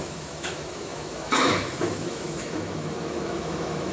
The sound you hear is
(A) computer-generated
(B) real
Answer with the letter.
A